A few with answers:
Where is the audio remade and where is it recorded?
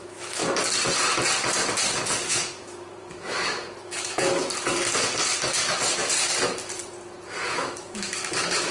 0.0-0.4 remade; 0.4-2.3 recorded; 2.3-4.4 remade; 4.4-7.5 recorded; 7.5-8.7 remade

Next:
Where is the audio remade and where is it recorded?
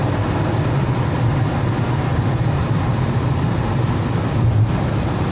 0.0-2.1 recorded; 2.1-5.3 remade